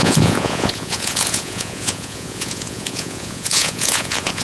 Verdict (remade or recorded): remade